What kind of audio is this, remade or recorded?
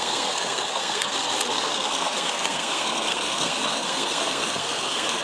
remade